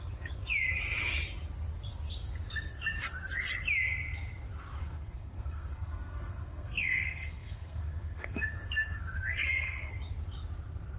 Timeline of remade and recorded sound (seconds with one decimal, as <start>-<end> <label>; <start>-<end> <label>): 0.0-4.8 recorded; 4.8-9.9 remade; 9.9-11.0 recorded

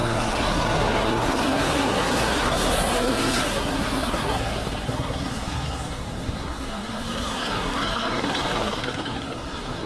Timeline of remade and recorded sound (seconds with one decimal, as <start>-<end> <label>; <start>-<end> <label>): 0.0-9.9 remade

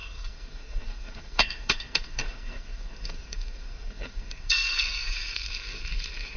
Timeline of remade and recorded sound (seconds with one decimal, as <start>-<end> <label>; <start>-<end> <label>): 0.0-6.4 remade

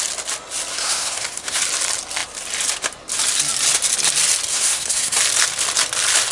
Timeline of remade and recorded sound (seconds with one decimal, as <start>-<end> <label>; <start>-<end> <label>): 0.0-0.7 recorded; 0.7-1.6 remade; 1.6-4.5 recorded; 4.5-5.2 remade; 5.2-6.3 recorded

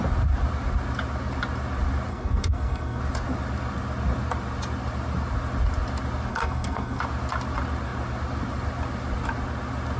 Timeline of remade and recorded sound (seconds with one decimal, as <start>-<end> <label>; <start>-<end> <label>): 0.0-2.1 recorded; 2.1-3.0 remade; 3.0-6.3 recorded; 6.3-7.0 remade; 7.0-10.0 recorded